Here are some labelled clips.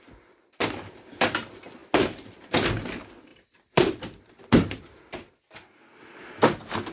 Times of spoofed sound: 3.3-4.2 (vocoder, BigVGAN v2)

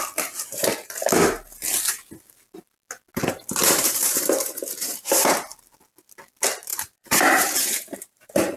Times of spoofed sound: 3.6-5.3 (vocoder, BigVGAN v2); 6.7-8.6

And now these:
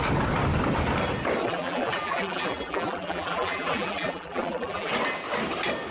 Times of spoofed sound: 1.4-4.9 (vocoder, BigVGAN v2)